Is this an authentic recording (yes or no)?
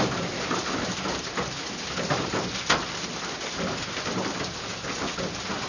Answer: yes